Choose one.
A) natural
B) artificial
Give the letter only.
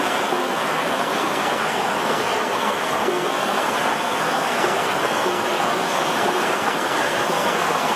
B